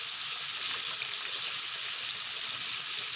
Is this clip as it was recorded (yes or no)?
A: yes